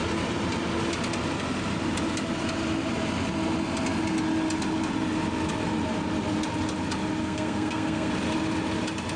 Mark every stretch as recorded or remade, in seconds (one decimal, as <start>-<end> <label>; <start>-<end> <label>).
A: 0.0-7.2 recorded; 7.2-8.1 remade; 8.1-9.2 recorded